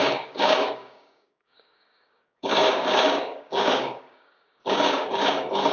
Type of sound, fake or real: fake